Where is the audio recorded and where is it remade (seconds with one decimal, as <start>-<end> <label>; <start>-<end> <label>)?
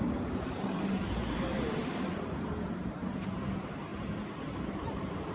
0.0-3.9 remade; 3.9-4.4 recorded; 4.4-5.3 remade